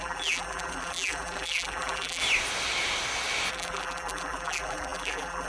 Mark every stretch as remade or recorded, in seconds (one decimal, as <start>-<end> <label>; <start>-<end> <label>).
0.0-2.2 remade; 2.2-3.5 recorded; 3.5-5.5 remade